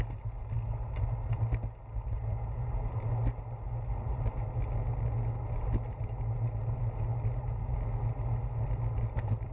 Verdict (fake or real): real